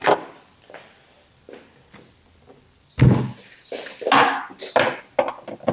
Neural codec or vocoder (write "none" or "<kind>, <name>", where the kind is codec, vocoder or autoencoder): none